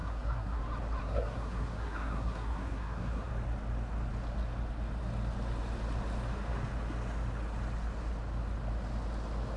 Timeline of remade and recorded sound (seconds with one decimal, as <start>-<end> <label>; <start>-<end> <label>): 0.0-0.6 remade; 0.6-1.0 recorded; 1.0-3.3 remade; 3.3-9.6 recorded